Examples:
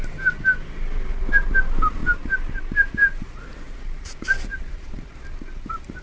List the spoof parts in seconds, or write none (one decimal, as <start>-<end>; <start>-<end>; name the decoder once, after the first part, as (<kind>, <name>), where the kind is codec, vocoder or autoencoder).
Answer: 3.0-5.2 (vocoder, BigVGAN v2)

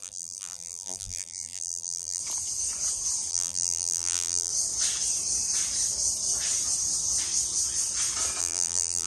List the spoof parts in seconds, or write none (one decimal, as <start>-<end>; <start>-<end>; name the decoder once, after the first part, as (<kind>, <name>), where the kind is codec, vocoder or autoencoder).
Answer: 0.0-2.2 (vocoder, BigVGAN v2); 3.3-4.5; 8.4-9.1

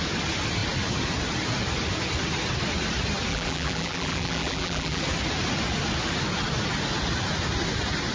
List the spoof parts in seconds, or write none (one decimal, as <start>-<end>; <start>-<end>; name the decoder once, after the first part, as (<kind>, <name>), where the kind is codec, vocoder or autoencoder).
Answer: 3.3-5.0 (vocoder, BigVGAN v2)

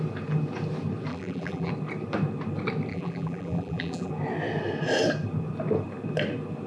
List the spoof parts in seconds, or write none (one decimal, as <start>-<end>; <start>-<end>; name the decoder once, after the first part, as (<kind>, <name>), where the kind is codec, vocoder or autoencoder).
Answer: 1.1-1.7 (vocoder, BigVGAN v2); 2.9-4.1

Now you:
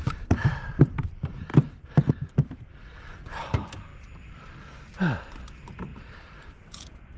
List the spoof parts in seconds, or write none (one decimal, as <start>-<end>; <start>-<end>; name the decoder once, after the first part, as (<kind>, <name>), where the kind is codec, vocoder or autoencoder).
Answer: 0.0-7.2 (vocoder, BigVGAN v2)